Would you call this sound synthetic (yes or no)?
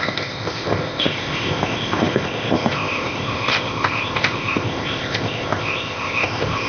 yes